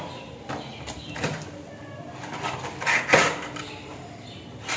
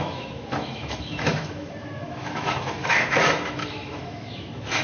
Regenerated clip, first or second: second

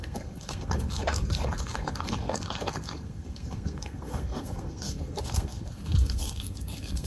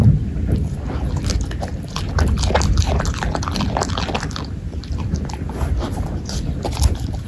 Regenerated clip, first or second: first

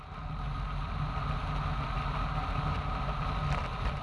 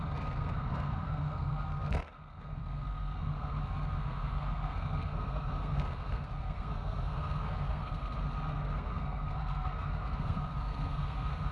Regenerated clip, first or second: second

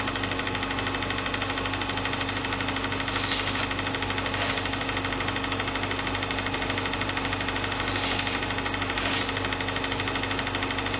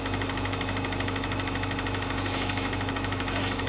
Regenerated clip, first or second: second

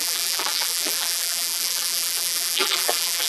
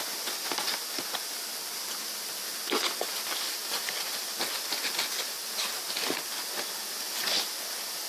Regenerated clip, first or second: first